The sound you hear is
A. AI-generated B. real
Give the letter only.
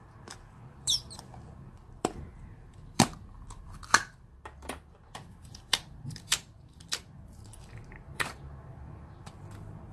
A